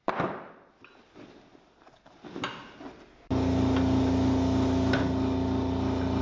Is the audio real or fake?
real